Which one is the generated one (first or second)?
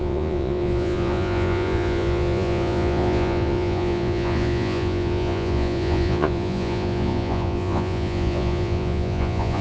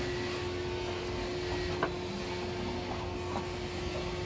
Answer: first